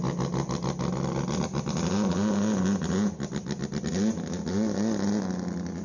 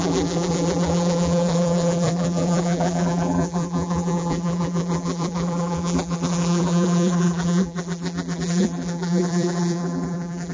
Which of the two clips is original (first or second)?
first